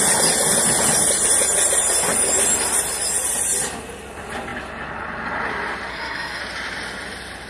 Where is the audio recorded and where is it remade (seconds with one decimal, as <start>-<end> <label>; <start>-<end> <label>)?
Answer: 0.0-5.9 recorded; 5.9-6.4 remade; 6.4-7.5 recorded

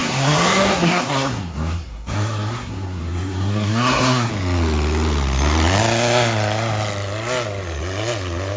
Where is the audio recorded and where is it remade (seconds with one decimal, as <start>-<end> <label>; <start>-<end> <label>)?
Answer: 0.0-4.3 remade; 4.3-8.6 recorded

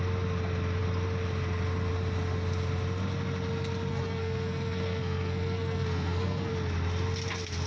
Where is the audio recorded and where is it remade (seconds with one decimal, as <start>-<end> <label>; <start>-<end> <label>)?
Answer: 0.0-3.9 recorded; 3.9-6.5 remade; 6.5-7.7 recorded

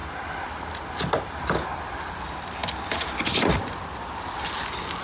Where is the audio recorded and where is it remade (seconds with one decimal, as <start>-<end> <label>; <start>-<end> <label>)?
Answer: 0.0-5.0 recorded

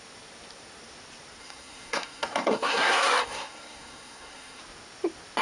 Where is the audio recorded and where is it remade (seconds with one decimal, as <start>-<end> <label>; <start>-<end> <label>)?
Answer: 0.0-1.4 recorded; 1.4-4.6 remade; 4.6-5.4 recorded